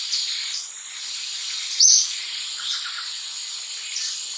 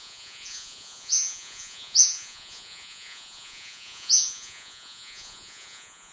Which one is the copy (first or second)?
second